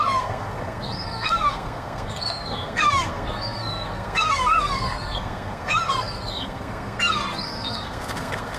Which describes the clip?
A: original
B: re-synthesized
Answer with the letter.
B